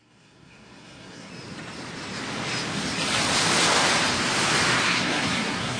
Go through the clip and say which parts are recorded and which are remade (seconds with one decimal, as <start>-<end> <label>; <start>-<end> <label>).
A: 0.0-1.3 remade; 1.3-4.8 recorded; 4.8-5.8 remade

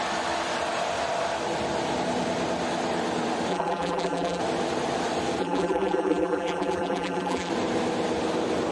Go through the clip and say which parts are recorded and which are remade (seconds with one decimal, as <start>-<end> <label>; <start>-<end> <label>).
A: 0.0-3.5 recorded; 3.5-4.4 remade; 4.4-5.4 recorded; 5.4-7.5 remade; 7.5-8.7 recorded

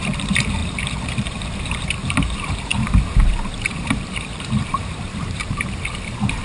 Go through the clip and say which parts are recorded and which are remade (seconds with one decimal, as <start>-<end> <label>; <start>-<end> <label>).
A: 0.0-6.4 remade

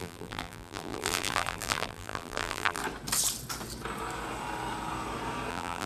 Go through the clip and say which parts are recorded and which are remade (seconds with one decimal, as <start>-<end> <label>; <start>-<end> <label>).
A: 0.0-2.8 remade; 2.8-5.5 recorded; 5.5-5.9 remade

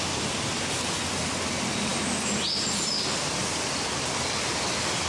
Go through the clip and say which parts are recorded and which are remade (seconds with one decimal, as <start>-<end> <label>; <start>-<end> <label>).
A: 0.0-5.1 recorded

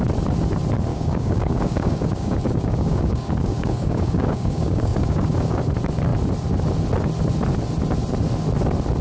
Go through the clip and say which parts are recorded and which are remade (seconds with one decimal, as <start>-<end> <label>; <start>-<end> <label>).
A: 0.0-0.9 recorded; 0.9-5.6 remade; 5.6-9.0 recorded

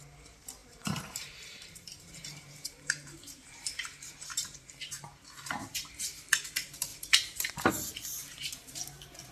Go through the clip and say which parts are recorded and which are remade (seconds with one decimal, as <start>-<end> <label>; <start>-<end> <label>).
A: 0.0-0.6 recorded; 0.6-4.8 remade; 4.8-8.2 recorded; 8.2-8.8 remade; 8.8-9.3 recorded

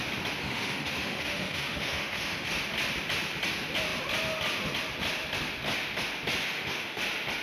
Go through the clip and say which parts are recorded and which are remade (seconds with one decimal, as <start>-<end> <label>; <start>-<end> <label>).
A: 0.0-0.4 recorded; 0.4-2.5 remade; 2.5-6.4 recorded; 6.4-7.0 remade; 7.0-7.4 recorded